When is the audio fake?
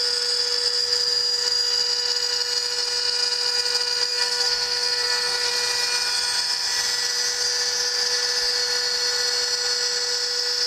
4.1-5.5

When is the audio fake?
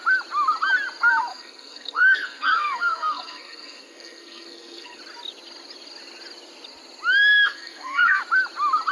1.3-5.0; 7.2-8.2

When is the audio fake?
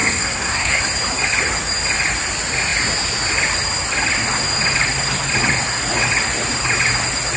0.0-0.8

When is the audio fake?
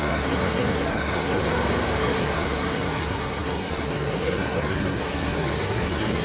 0.0-1.4; 2.0-6.2